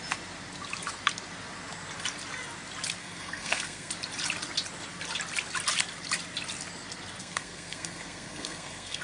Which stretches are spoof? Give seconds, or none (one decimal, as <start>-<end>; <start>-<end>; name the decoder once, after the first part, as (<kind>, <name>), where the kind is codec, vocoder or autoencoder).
3.0-3.9 (codec, SNAC); 7.2-9.0